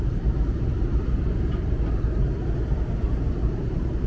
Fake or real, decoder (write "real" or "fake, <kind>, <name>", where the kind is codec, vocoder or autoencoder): fake, vocoder, BigVGAN v2